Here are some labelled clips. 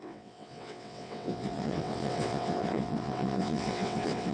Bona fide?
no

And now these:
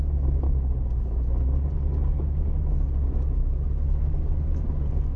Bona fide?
yes